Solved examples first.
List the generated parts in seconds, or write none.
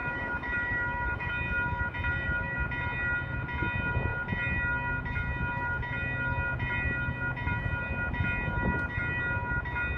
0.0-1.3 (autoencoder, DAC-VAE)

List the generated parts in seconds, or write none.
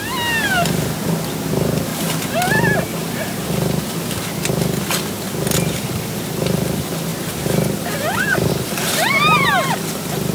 none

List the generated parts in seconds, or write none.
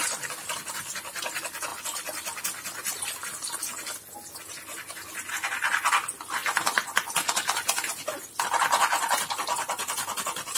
none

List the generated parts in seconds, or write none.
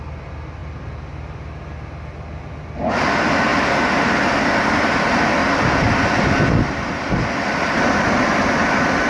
none